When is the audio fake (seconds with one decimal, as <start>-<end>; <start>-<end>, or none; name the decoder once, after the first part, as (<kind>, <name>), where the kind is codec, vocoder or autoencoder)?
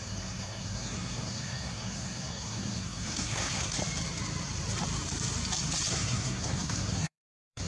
0.0-3.8 (codec, SNAC); 5.9-7.7